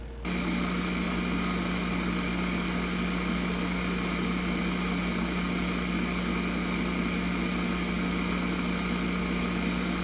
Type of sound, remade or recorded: recorded